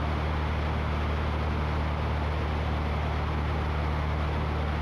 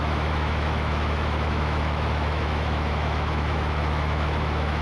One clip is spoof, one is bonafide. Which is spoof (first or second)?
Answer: second